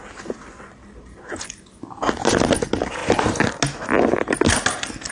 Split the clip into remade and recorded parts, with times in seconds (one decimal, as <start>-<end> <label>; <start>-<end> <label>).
0.0-5.1 recorded

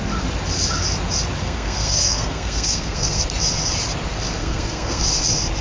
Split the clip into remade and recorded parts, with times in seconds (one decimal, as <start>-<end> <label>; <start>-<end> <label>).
0.0-1.4 recorded; 1.4-3.2 remade; 3.2-4.4 recorded; 4.4-5.0 remade; 5.0-5.6 recorded

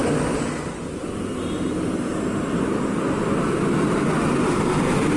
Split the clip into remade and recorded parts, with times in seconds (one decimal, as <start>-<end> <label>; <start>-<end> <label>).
0.0-5.2 recorded

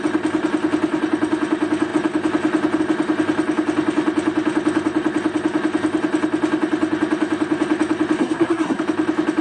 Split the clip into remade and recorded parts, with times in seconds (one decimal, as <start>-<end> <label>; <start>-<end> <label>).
0.0-8.2 recorded; 8.2-8.8 remade; 8.8-9.4 recorded

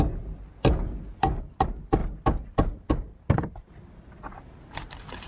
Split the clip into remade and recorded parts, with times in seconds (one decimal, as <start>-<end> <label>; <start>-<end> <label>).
0.0-5.3 recorded

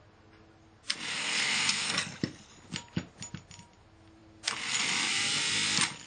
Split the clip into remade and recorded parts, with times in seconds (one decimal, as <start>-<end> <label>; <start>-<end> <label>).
0.0-1.1 recorded; 1.1-2.2 remade; 2.2-6.1 recorded

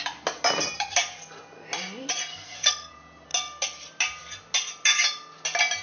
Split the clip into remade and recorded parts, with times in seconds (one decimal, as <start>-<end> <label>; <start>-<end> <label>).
0.0-2.3 recorded; 2.3-2.9 remade; 2.9-5.8 recorded